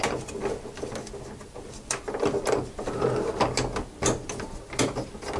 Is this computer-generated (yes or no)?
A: no